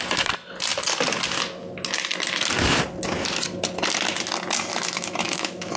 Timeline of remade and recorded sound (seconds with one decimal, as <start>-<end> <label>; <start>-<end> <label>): 0.0-4.7 recorded; 4.7-5.8 remade